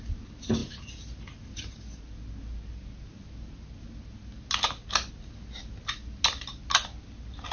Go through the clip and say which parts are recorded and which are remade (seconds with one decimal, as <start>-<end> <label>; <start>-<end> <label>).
0.0-7.5 recorded